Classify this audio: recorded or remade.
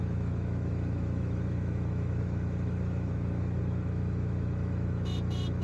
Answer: remade